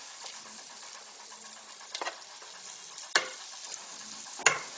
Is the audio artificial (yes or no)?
no